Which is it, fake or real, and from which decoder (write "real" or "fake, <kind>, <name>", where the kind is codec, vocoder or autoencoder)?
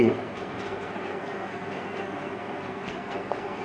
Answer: fake, codec, SNAC